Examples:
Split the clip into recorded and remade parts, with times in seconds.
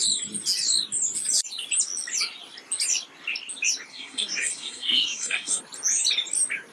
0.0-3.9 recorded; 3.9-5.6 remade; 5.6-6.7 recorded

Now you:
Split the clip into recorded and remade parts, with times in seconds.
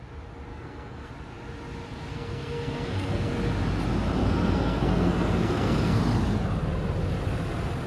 0.0-0.5 recorded; 0.5-1.1 remade; 1.1-2.1 recorded; 2.1-3.3 remade; 3.3-4.2 recorded; 4.2-6.0 remade; 6.0-7.9 recorded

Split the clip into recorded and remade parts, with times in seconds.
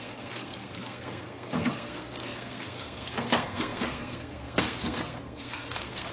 0.0-6.1 remade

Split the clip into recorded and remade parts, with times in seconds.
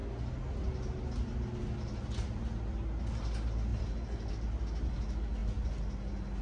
0.0-6.4 recorded